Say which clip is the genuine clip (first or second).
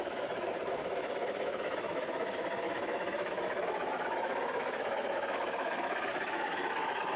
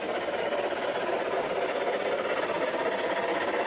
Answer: second